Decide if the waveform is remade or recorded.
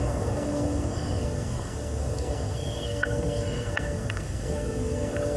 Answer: remade